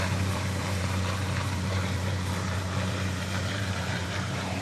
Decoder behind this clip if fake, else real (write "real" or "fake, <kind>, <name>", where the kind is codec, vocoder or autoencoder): fake, vocoder, BigVGAN v2